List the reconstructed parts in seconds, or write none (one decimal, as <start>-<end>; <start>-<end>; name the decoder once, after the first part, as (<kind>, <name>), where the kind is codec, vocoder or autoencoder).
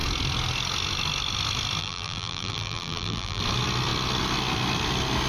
1.8-3.4 (vocoder, BigVGAN v2)